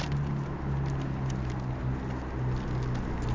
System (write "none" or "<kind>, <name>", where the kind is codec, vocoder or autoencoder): none